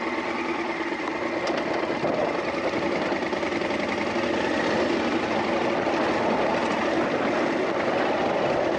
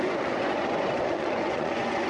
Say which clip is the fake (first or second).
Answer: second